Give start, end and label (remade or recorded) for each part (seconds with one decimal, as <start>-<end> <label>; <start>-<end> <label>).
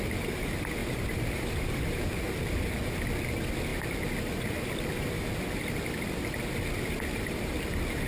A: 0.0-0.8 recorded; 0.8-1.7 remade; 1.7-8.1 recorded